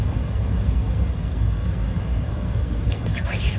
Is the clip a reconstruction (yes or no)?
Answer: yes